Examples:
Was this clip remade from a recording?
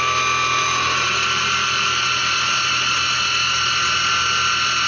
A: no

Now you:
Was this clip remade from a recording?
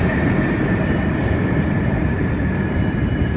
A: yes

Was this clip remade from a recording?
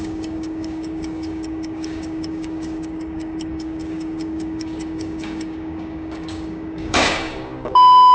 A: yes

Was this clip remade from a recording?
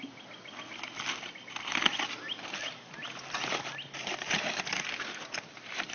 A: no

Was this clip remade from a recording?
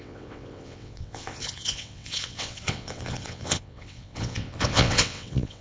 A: yes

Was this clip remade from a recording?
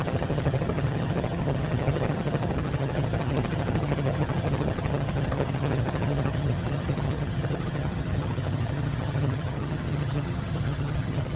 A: yes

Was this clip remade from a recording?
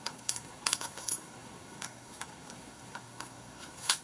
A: yes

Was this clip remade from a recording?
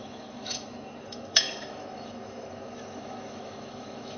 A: yes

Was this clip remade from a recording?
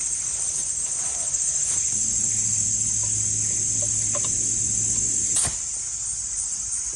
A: no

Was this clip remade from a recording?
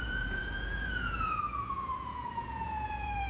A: yes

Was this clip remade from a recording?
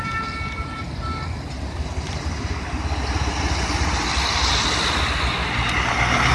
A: no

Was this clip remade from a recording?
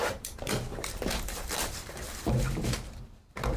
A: yes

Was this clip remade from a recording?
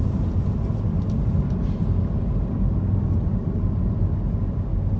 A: no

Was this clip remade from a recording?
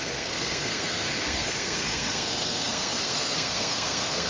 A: yes